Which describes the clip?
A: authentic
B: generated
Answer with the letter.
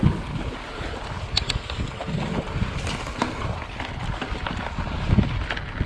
A